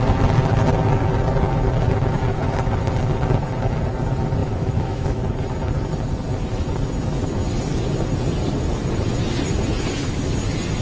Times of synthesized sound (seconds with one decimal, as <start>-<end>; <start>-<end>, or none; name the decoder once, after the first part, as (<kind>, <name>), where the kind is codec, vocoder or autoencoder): 4.4-5.2 (autoencoder, DAC-VAE)